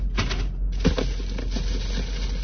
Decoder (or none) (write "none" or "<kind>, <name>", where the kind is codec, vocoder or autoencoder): none